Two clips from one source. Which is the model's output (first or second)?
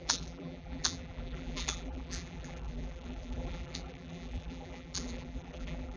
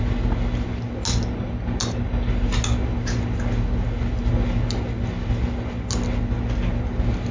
first